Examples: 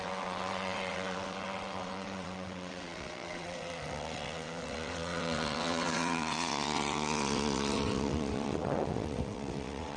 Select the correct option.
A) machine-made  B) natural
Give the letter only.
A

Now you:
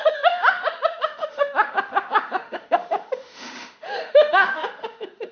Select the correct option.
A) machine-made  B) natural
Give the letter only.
A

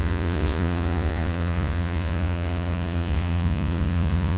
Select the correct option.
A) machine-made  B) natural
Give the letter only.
A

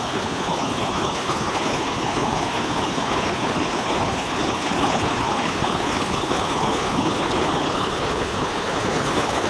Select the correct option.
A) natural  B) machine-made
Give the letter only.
B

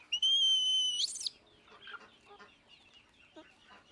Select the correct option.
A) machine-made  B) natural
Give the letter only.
B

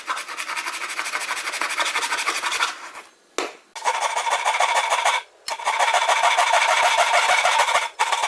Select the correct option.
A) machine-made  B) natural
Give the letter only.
B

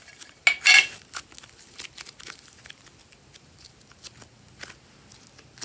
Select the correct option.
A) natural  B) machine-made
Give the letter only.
A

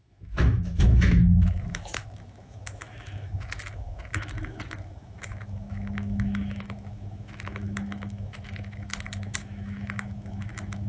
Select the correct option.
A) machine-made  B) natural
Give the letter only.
A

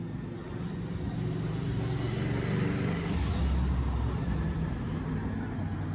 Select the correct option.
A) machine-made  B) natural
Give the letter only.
B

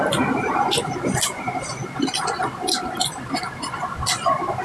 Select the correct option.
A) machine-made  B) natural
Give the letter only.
A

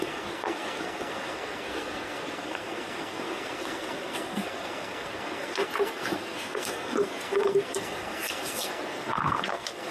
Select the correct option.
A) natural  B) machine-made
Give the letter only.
B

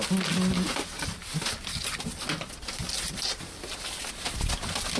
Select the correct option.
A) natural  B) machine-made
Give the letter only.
A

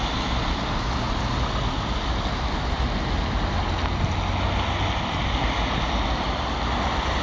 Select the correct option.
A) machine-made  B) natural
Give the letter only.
B